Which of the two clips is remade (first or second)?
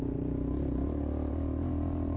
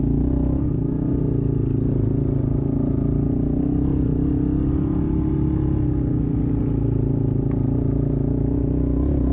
first